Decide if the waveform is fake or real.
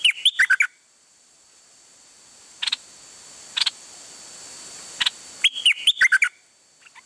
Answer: real